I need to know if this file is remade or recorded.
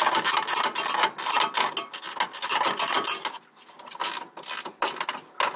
recorded